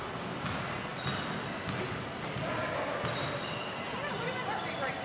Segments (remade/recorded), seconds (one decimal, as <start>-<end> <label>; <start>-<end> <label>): 0.0-5.0 recorded